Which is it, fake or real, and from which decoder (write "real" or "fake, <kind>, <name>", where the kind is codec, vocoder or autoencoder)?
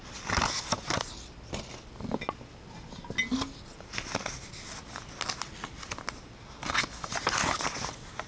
real